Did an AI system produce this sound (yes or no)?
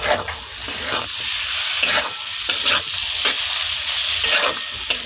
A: no